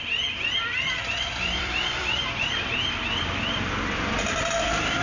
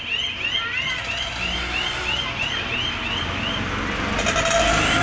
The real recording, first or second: second